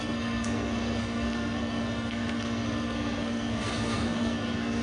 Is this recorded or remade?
remade